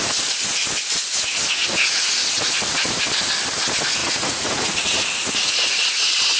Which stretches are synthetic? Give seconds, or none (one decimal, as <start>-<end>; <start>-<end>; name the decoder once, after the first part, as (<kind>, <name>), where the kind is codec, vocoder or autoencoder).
1.6-2.1 (vocoder, Vocos); 4.0-5.5